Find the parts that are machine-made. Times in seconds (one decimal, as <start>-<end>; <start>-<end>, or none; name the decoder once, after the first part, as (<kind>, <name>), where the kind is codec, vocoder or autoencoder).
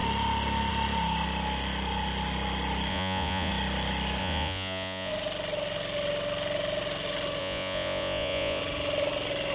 2.9-3.5 (vocoder, Vocos); 4.2-5.1; 7.4-8.6